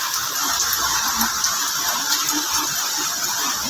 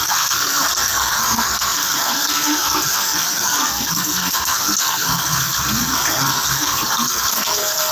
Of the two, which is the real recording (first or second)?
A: first